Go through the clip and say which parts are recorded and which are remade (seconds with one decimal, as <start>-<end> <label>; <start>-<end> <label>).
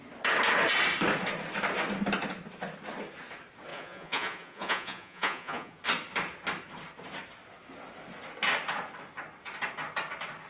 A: 0.0-3.7 recorded; 3.7-5.8 remade; 5.8-10.5 recorded